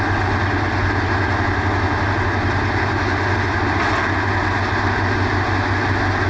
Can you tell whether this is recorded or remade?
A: recorded